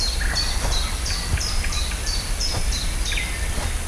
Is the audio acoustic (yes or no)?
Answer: yes